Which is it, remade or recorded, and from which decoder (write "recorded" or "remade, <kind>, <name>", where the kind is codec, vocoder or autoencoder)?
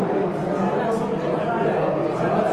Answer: recorded